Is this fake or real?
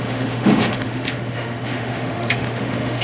fake